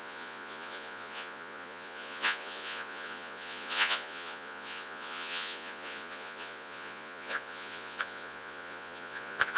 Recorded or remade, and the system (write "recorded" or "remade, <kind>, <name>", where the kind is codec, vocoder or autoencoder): remade, vocoder, Vocos